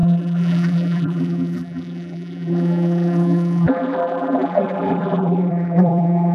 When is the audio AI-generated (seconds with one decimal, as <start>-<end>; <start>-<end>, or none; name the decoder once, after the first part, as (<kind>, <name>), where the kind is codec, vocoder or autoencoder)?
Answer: 0.0-6.3 (vocoder, BigVGAN v2)